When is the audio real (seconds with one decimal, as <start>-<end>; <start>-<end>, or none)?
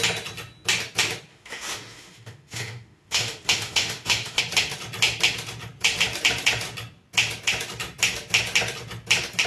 0.0-1.3; 4.4-9.5